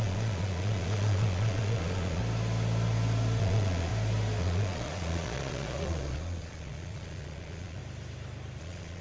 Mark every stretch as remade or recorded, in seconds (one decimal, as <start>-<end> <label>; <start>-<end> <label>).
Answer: 0.0-2.2 remade; 2.2-3.4 recorded; 3.4-3.9 remade; 3.9-4.4 recorded; 4.4-7.8 remade; 7.8-8.6 recorded; 8.6-9.0 remade